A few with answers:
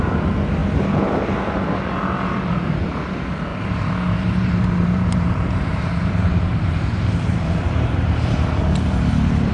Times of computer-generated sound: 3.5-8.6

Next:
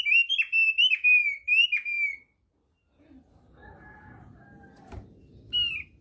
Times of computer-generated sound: none

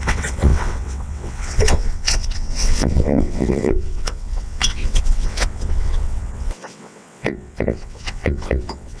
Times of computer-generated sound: 0.0-9.0

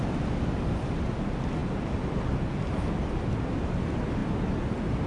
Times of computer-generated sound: none

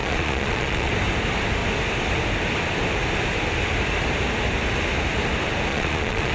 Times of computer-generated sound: 0.0-0.9; 5.7-6.3

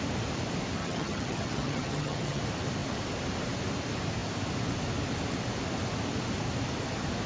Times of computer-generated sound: 0.8-2.4

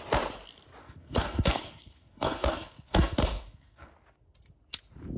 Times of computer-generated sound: 0.8-3.9